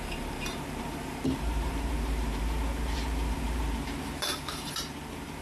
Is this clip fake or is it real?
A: fake